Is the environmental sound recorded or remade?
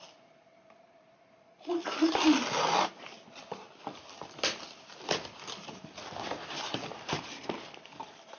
remade